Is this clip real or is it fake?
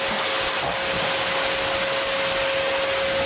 real